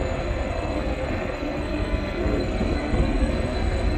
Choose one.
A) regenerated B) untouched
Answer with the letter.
A